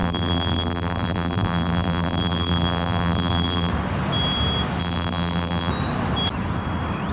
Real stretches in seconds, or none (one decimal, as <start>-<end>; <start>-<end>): 3.7-4.8; 5.7-7.1